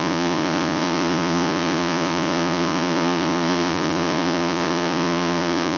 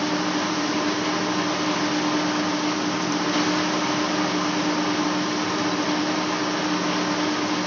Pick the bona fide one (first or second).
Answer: second